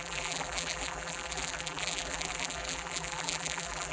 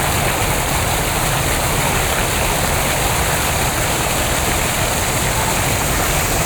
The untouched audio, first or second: second